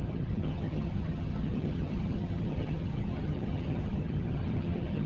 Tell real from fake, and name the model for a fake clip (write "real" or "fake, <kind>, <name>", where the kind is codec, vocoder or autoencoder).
fake, vocoder, HiFi-GAN